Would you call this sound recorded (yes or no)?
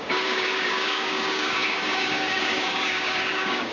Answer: no